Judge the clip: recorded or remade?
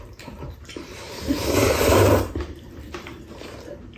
remade